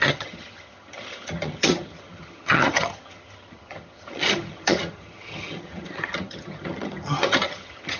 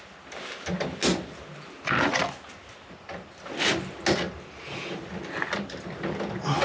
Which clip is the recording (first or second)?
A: second